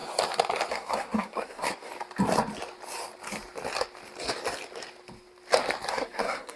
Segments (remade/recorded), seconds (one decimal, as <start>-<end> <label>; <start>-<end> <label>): 0.0-0.7 recorded; 0.7-1.9 remade; 1.9-5.9 recorded; 5.9-6.6 remade